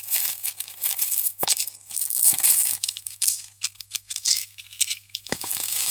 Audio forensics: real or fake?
fake